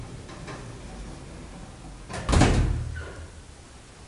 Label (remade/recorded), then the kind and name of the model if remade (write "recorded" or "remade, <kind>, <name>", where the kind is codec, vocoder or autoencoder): recorded